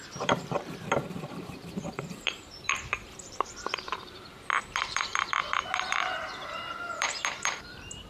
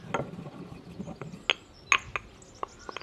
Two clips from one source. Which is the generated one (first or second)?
first